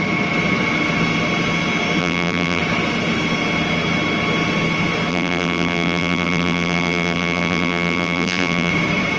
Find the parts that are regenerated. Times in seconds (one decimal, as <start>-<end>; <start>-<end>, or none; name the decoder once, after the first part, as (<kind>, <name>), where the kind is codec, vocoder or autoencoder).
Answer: 2.0-2.6 (vocoder, BigVGAN v2); 5.1-8.7